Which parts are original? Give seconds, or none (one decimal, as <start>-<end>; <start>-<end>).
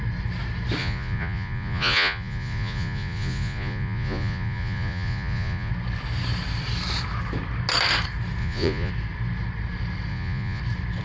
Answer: 0.0-0.8; 5.7-8.4; 8.9-10.1; 10.6-11.0